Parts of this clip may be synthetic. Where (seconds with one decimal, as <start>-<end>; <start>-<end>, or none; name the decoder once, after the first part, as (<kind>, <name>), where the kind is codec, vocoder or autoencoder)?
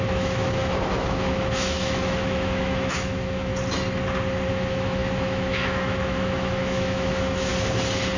0.0-3.5 (autoencoder, DAC-VAE); 4.5-7.5